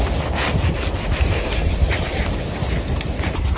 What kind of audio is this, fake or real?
real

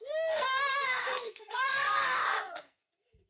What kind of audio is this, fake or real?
fake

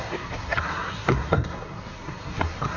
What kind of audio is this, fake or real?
fake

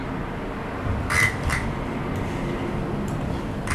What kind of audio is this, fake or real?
real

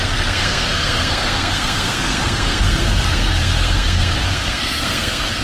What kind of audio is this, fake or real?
fake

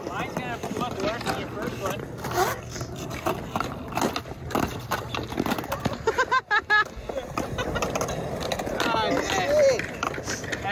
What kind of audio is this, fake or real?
real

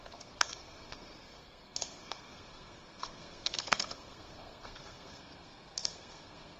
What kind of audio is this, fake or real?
fake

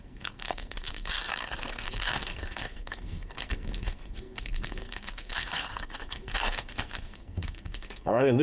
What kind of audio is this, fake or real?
fake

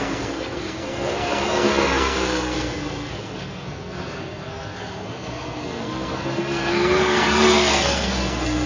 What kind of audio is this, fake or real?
fake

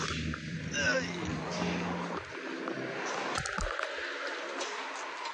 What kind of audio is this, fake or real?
real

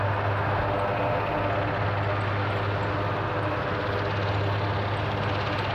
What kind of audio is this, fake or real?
real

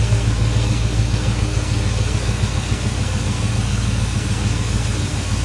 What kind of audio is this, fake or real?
fake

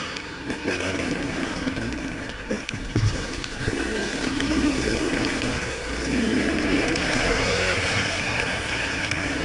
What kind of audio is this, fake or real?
fake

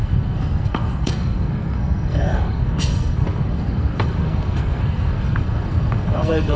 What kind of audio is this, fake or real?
fake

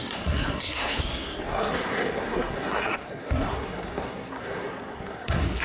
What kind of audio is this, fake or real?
fake